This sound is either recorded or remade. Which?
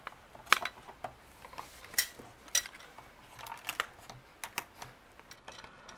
recorded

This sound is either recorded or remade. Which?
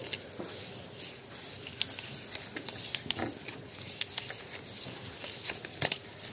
recorded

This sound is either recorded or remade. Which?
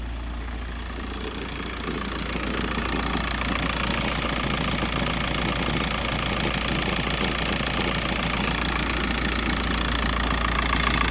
recorded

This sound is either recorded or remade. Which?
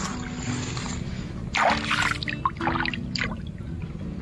recorded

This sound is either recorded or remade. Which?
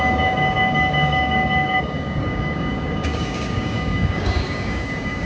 remade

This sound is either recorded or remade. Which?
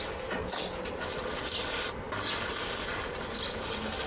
recorded